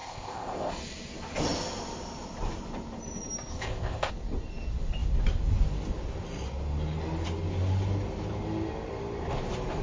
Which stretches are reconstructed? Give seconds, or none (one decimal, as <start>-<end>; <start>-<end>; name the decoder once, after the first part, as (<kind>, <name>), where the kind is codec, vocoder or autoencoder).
0.0-0.7 (codec, ZipCodec); 3.5-4.1